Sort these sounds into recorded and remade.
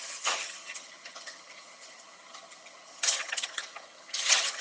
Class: remade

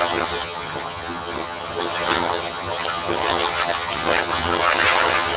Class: remade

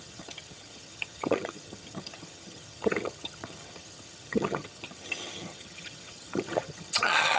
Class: remade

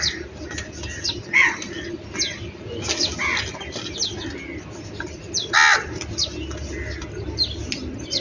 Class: recorded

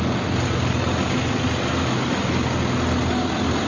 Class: recorded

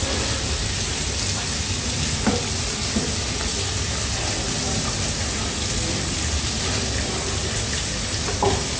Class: recorded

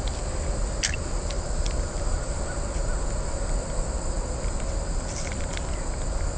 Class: recorded